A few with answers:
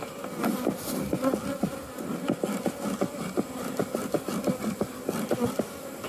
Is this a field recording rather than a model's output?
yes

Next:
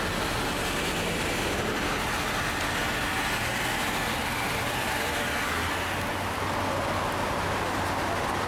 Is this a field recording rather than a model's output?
yes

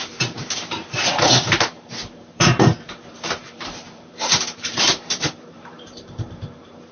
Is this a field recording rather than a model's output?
no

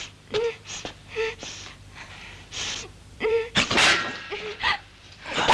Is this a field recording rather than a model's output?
no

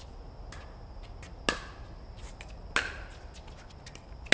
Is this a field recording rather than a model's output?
yes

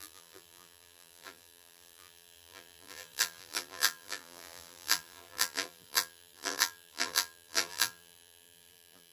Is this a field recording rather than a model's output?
no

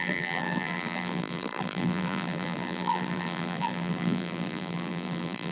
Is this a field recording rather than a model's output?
no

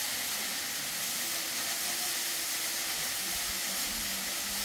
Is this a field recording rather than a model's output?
yes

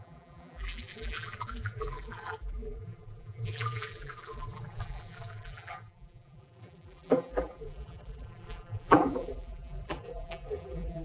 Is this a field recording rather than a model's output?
no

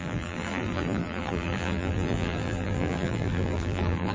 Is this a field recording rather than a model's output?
no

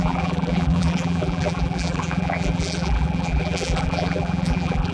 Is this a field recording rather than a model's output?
no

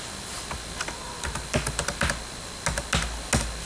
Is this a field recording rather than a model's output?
yes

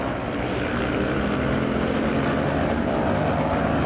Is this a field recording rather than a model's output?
yes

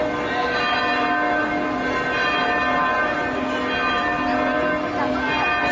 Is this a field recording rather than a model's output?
yes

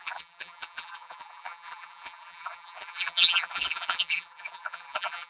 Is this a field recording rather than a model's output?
no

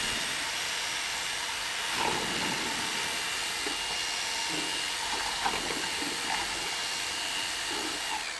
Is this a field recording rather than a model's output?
yes